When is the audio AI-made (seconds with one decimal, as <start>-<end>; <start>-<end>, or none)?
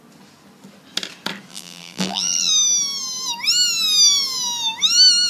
1.5-2.5